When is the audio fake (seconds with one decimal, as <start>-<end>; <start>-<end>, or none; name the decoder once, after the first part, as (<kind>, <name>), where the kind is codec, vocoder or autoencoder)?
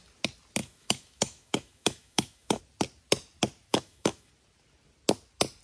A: 0.6-2.6 (autoencoder, DAC-VAE); 3.7-4.3